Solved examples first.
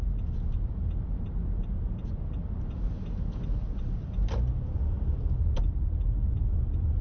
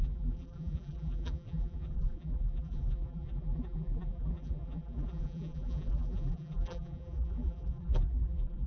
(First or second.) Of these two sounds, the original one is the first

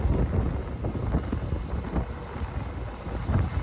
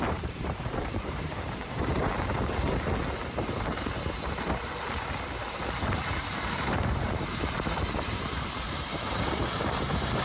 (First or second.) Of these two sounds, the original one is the first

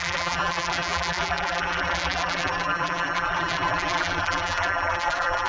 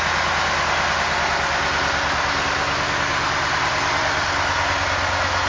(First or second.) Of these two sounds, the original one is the second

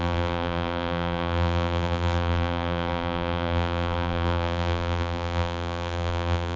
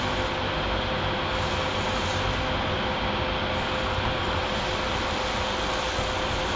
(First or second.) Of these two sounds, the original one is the second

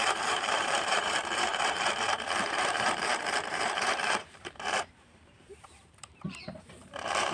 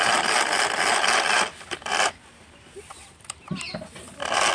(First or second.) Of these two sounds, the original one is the second